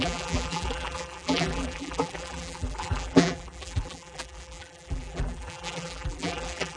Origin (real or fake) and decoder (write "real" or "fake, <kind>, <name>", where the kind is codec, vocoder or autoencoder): fake, vocoder, BigVGAN v2